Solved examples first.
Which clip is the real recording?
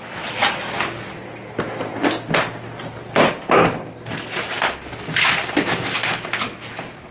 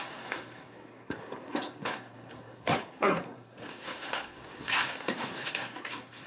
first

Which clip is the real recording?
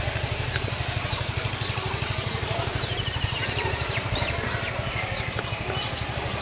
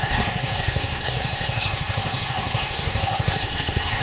first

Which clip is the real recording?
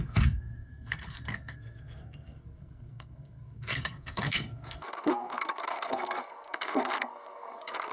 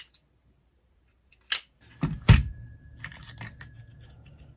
second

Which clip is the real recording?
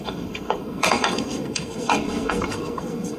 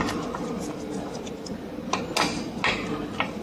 second